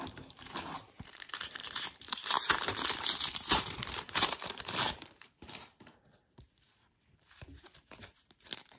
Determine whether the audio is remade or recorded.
remade